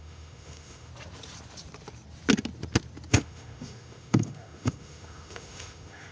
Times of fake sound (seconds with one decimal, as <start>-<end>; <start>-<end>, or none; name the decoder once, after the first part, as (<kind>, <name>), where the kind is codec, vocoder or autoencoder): 0.0-0.9 (autoencoder, DAC-VAE); 3.1-6.1